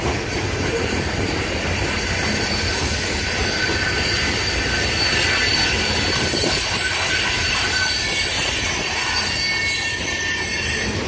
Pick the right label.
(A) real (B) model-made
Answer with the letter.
A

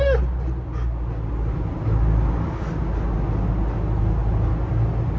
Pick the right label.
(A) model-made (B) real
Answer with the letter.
B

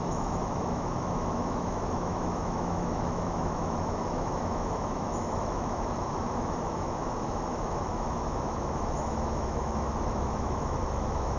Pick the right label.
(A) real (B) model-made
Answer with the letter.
B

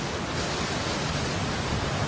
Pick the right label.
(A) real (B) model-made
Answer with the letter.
A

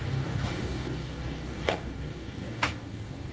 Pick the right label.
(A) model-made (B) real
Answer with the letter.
A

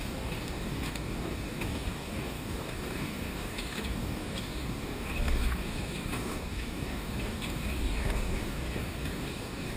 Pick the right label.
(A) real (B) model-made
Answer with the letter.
B